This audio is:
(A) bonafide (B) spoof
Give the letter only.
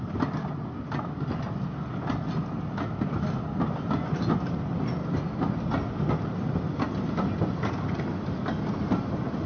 A